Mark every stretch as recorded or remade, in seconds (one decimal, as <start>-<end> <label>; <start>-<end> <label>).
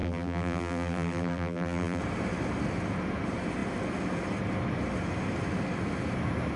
0.0-2.0 remade; 2.0-6.6 recorded